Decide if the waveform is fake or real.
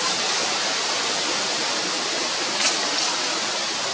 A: real